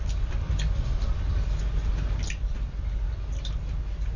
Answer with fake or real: real